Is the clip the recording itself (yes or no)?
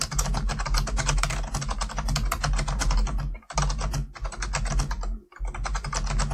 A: yes